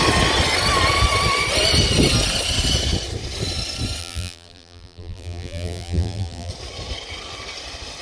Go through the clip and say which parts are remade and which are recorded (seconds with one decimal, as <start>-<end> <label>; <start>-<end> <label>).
0.0-4.0 recorded; 4.0-6.5 remade; 6.5-8.0 recorded